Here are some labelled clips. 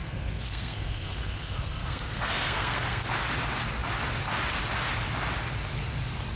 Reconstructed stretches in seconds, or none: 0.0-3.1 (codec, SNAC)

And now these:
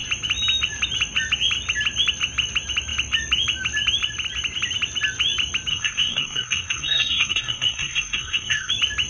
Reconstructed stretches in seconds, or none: 5.7-8.7 (codec, SNAC)

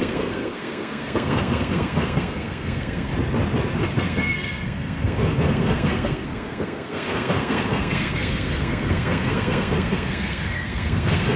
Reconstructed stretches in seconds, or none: 0.0-3.1 (codec, SNAC); 3.8-11.4